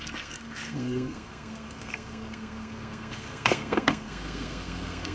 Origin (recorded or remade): remade